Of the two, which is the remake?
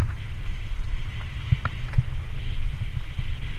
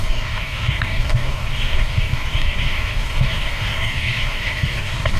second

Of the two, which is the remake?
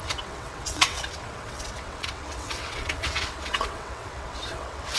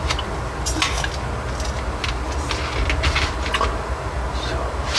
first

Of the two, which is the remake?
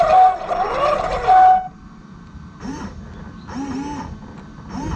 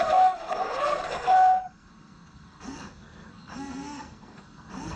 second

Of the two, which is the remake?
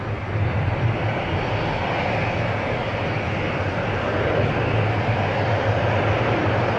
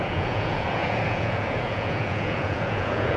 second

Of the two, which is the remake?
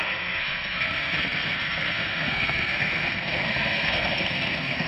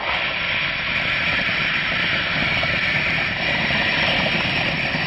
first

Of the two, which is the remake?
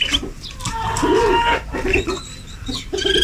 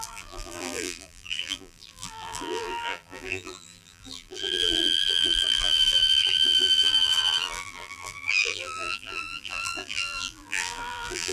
second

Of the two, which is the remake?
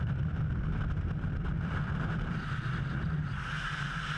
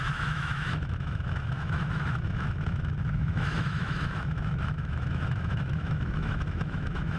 second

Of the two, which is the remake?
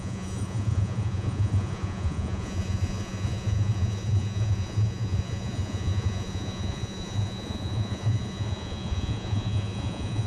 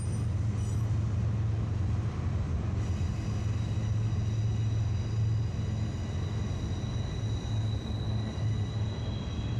first